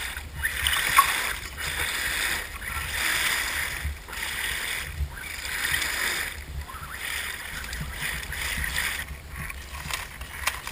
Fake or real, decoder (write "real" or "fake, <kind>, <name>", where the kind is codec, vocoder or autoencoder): real